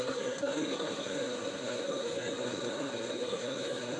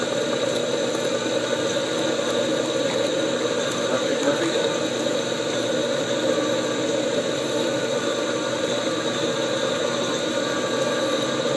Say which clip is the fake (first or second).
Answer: first